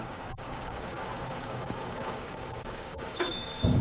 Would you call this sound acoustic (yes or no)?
no